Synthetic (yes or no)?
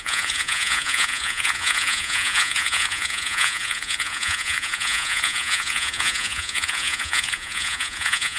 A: yes